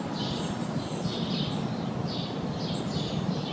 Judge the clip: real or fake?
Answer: real